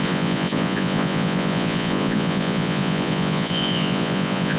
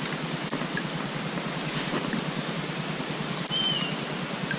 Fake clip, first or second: first